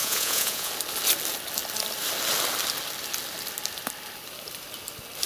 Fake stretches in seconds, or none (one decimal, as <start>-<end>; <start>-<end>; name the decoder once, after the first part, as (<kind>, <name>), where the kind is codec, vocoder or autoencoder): 0.0-0.7 (vocoder, Vocos)